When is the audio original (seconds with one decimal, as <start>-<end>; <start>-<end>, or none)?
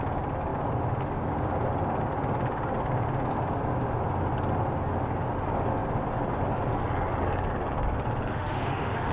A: 0.0-8.3